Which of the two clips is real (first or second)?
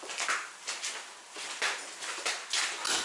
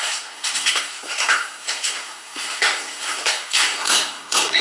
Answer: first